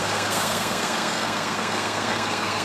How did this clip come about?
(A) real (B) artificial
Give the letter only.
B